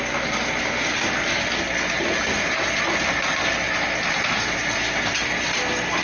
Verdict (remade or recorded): recorded